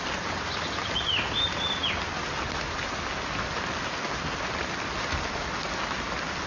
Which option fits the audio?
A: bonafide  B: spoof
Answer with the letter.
A